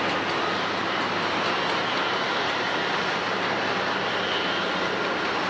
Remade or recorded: recorded